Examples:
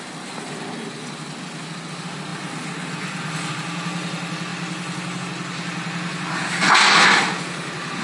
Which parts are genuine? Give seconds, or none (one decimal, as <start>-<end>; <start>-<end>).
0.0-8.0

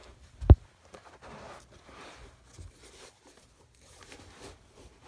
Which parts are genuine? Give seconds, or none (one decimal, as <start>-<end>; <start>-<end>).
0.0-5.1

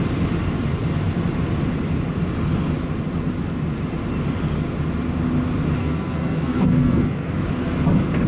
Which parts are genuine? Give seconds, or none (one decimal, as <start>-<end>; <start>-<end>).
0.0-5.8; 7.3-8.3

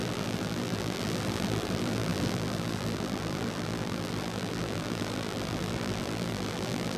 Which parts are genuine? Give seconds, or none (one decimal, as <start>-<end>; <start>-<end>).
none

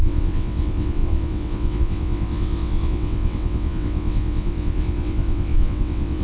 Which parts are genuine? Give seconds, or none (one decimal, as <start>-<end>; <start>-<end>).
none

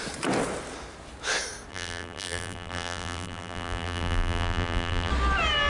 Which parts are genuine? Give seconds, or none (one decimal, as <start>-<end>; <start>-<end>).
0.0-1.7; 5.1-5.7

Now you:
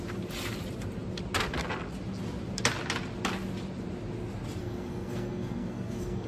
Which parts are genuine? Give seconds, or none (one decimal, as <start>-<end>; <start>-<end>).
0.0-4.6

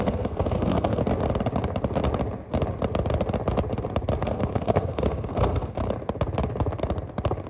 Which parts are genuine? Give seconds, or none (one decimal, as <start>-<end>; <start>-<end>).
1.0-4.2; 5.8-7.5